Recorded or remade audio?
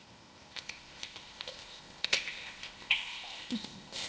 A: remade